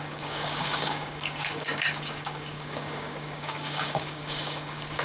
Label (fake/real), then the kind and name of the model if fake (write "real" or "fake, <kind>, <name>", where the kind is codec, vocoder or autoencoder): fake, codec, DAC